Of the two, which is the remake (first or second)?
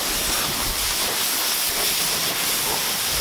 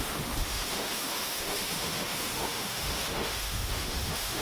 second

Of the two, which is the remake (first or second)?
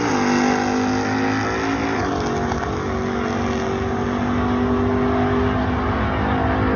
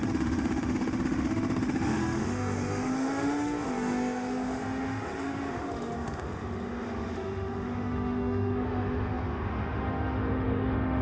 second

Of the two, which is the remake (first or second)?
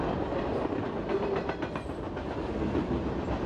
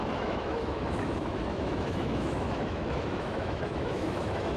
second